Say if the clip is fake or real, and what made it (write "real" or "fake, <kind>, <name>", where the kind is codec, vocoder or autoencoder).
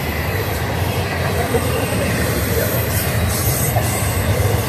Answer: fake, vocoder, BigVGAN v2